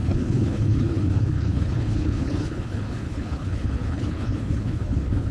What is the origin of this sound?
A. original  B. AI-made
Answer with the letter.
B